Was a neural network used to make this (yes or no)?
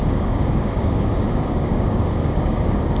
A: yes